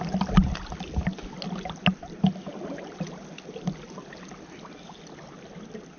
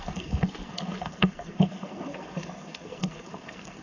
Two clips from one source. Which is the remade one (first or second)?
second